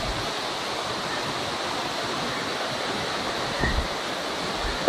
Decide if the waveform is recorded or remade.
recorded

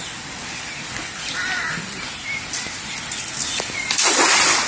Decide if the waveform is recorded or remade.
recorded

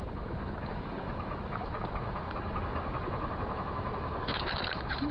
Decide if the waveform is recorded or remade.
remade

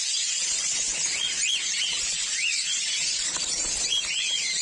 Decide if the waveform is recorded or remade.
recorded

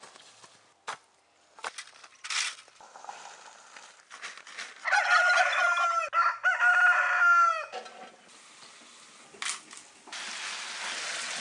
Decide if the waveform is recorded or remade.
recorded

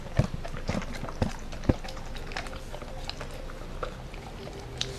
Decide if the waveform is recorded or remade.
recorded